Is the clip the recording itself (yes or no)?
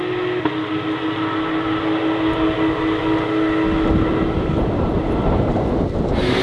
yes